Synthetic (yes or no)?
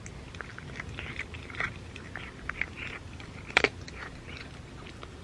no